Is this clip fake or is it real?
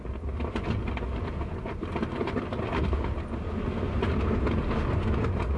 real